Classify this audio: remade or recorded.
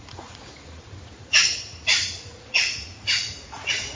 remade